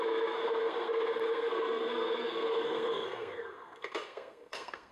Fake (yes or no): yes